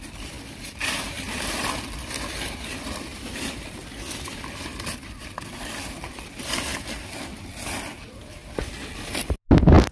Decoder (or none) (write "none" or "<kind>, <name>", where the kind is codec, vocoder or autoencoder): none